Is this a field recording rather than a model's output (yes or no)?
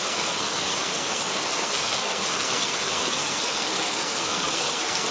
no